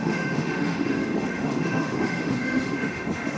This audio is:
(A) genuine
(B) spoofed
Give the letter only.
B